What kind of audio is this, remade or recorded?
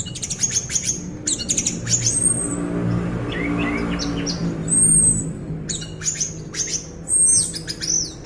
recorded